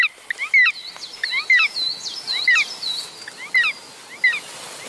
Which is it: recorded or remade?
recorded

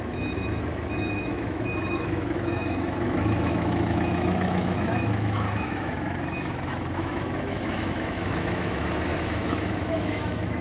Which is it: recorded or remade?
remade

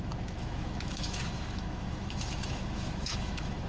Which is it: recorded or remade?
remade